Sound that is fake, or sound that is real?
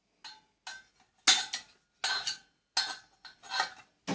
real